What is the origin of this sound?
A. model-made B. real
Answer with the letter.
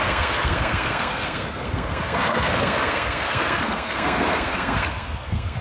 A